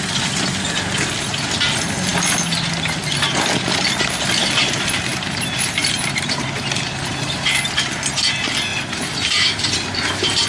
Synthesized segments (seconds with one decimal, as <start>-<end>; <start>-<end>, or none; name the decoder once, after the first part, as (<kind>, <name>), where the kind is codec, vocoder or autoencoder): 5.1-7.1 (vocoder, BigVGAN v2); 8.7-10.5